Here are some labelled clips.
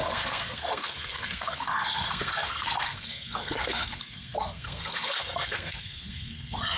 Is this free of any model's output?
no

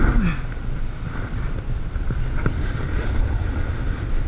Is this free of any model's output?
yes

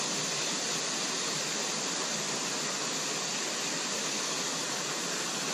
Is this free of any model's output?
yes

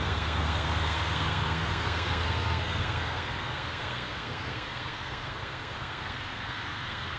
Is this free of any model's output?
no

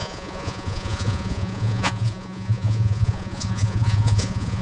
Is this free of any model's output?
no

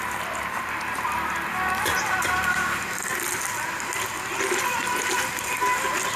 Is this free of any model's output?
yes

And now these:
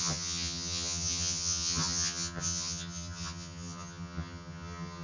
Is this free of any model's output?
no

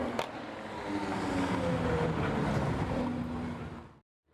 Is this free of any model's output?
yes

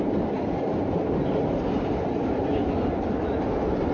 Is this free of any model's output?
yes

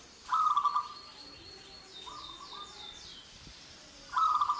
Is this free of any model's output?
yes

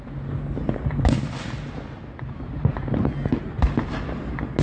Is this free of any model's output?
yes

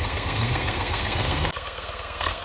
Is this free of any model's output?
no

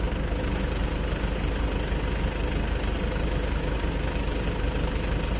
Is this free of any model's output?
yes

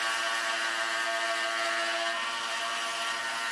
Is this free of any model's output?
yes